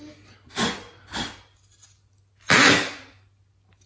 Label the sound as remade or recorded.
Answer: recorded